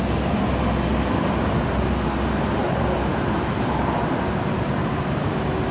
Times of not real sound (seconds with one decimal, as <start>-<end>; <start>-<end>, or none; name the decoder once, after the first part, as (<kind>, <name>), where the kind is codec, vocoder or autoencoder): none